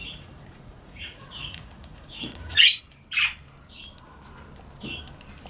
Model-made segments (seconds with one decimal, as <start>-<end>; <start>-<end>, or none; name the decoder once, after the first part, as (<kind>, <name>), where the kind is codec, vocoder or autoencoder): 0.0-2.8 (vocoder, Vocos)